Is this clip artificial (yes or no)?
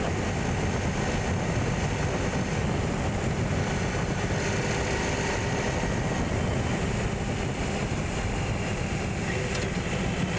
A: no